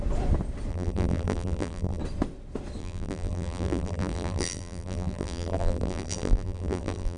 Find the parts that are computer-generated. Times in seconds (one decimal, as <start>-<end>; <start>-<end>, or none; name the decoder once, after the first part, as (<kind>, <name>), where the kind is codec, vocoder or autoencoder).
0.7-2.0 (vocoder, BigVGAN v2); 2.8-7.2